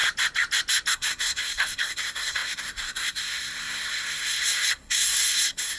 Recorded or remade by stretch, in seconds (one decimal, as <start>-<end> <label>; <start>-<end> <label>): 0.0-0.9 recorded; 0.9-5.8 remade